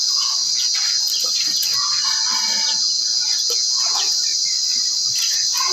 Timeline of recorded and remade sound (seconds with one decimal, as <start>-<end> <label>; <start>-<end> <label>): 0.0-2.7 recorded; 2.7-4.1 remade; 4.1-5.7 recorded